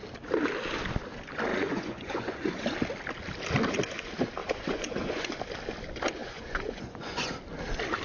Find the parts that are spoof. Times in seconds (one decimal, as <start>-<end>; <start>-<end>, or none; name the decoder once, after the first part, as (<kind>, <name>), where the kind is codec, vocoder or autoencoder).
1.5-2.6 (vocoder, Vocos); 4.4-5.3; 6.2-7.3